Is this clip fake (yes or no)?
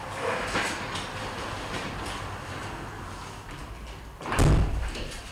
no